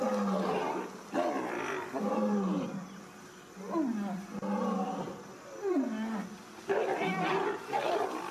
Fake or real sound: real